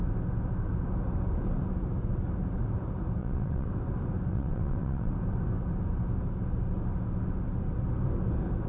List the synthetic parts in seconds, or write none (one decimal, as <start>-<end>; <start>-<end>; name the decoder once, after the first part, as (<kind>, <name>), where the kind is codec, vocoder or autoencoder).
3.2-3.7 (vocoder, WaveNeXt); 4.3-5.1